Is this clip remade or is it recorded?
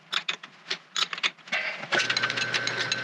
recorded